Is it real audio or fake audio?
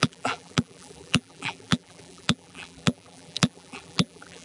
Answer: fake